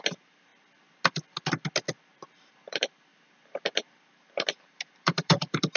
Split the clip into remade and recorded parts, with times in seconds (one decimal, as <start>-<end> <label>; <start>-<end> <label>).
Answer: 0.0-0.5 remade; 0.5-2.5 recorded; 2.5-5.8 remade